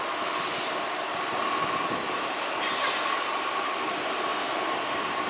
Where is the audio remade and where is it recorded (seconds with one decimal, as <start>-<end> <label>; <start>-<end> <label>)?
0.0-5.3 recorded